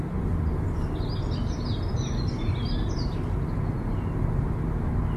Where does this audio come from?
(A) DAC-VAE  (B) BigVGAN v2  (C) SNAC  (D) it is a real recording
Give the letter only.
D